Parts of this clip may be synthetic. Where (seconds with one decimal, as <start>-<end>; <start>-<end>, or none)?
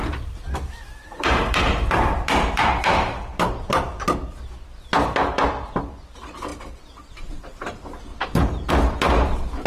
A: 0.0-4.4; 8.1-8.7